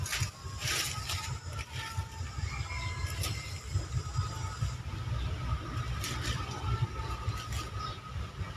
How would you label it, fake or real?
real